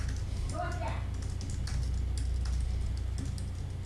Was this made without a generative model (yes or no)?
yes